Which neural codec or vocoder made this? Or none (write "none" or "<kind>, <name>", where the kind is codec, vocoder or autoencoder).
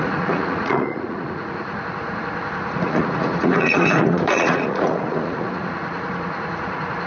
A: vocoder, Vocos